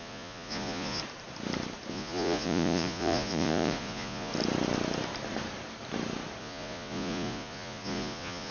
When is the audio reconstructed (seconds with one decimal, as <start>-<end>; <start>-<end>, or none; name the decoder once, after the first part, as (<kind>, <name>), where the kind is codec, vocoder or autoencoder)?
0.0-1.0 (vocoder, Vocos); 1.9-4.3; 6.4-8.5